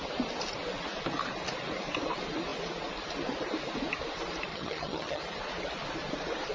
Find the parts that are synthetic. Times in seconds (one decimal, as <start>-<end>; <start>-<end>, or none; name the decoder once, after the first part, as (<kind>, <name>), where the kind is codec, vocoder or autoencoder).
4.5-5.2 (vocoder, HiFi-GAN)